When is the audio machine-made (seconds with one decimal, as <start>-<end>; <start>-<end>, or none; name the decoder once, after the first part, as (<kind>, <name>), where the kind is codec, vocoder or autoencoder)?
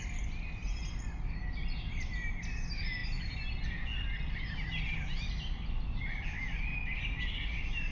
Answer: none